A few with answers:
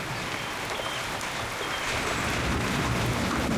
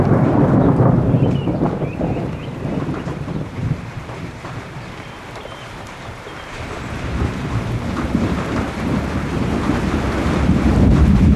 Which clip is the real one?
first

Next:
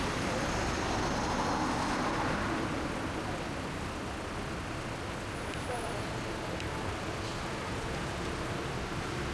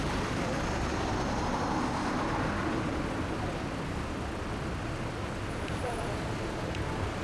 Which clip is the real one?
first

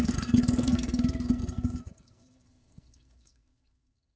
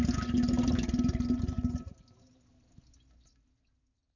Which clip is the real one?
second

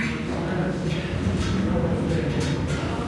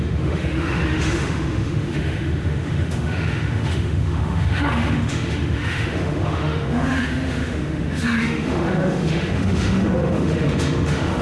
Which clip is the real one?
first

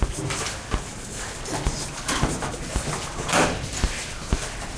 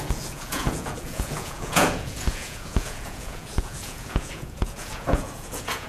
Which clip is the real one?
first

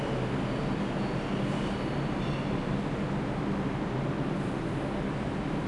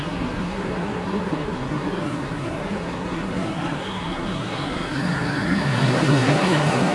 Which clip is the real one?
first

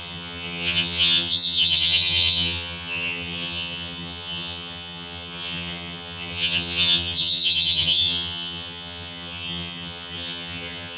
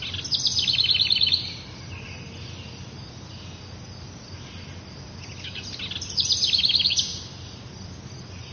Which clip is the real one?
second